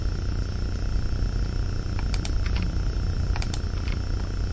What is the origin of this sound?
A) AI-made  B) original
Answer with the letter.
B